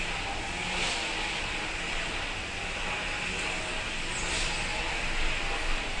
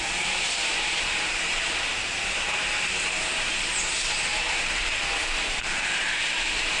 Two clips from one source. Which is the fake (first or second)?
second